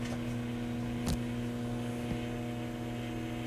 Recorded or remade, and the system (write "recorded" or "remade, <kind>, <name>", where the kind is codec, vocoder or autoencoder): recorded